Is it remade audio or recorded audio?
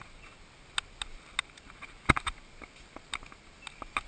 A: recorded